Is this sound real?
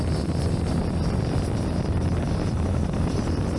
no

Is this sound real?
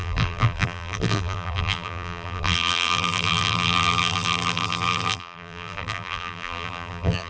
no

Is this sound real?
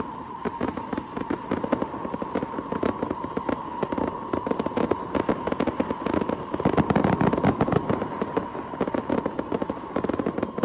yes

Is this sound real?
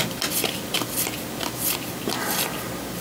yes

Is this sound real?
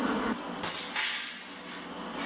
yes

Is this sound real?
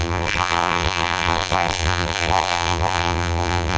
no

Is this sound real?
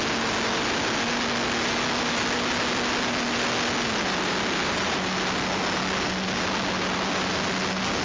yes